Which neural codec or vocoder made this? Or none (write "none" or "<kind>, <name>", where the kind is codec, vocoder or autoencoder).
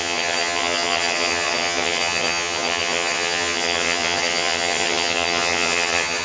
vocoder, HiFi-GAN